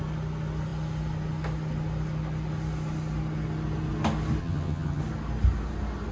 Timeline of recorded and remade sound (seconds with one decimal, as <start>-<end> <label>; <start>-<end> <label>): 0.0-4.4 recorded; 4.4-5.0 remade; 5.0-6.1 recorded